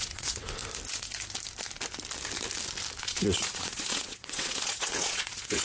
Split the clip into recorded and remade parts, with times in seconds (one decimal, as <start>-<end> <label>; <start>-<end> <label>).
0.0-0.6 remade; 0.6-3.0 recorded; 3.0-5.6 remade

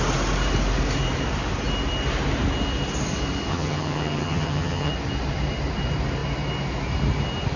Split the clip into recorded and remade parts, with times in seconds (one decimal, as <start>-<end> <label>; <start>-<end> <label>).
0.0-3.5 recorded; 3.5-4.9 remade; 4.9-7.6 recorded

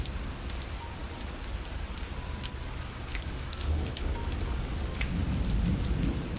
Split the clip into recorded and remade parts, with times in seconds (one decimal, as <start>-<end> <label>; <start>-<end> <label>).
0.0-3.1 recorded; 3.1-5.2 remade; 5.2-6.4 recorded

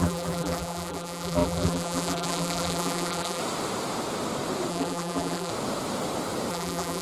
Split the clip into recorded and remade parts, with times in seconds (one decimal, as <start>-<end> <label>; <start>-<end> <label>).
0.0-3.4 remade; 3.4-4.7 recorded; 4.7-5.5 remade; 5.5-6.5 recorded; 6.5-7.0 remade